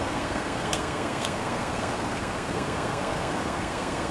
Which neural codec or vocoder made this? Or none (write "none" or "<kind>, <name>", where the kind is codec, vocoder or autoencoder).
codec, SNAC